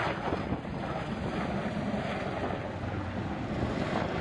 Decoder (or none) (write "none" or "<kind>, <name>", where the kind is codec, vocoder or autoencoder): none